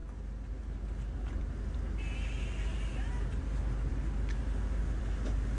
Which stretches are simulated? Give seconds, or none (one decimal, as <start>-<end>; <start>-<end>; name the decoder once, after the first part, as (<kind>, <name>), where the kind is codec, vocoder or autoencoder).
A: none